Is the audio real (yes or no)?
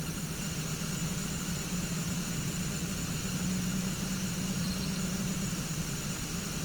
no